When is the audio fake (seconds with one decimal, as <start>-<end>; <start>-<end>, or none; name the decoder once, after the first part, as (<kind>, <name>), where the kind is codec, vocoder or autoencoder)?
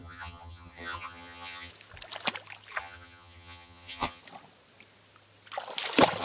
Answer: 0.0-1.7 (vocoder, HiFi-GAN); 2.8-4.2